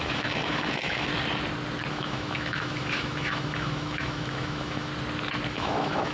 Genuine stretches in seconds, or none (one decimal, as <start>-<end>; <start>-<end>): 1.1-1.9; 4.9-5.5